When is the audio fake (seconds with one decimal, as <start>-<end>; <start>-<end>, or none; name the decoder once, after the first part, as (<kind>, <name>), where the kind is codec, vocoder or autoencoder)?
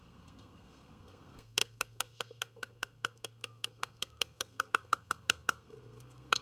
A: 0.0-6.4 (codec, SNAC)